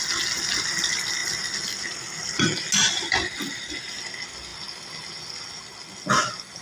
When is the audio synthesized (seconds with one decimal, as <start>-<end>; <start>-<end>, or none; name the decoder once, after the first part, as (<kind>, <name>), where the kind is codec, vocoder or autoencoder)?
none